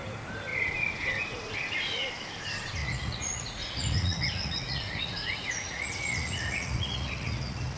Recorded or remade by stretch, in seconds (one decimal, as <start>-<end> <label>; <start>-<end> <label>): 0.0-2.8 recorded; 2.8-7.8 remade